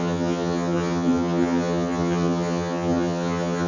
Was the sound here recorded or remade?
remade